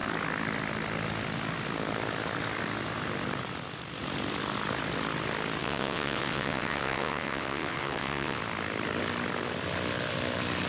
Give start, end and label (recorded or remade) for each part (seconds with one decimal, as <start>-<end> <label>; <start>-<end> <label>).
0.0-5.6 recorded; 5.6-8.4 remade; 8.4-10.7 recorded